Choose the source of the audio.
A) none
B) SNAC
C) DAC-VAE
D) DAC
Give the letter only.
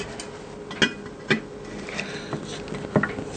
A